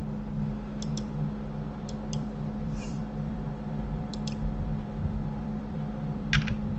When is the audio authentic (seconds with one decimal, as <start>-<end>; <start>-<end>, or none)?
0.0-0.9